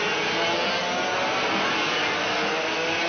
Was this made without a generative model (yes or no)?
yes